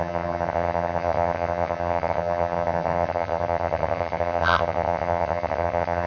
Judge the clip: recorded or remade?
remade